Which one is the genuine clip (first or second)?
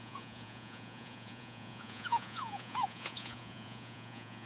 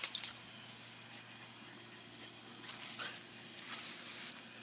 second